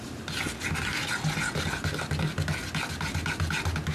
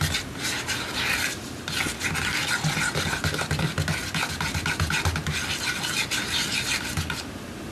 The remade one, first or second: second